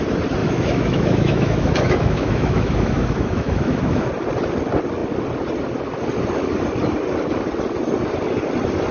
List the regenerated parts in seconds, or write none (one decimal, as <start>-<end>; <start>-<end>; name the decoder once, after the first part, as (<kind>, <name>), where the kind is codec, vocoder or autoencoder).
0.4-4.1 (autoencoder, DAC-VAE)